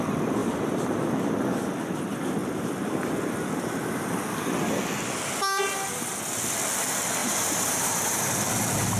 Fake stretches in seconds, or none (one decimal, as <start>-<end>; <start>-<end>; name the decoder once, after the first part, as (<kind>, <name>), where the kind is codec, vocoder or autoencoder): 0.4-1.0 (vocoder, BigVGAN v2); 2.4-3.0; 7.2-8.2